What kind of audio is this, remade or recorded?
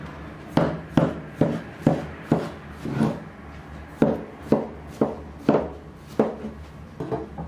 recorded